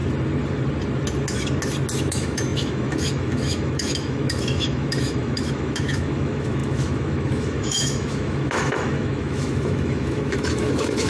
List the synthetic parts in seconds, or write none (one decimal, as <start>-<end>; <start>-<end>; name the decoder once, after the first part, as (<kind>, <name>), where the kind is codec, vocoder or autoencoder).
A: 2.0-11.1 (autoencoder, DAC-VAE)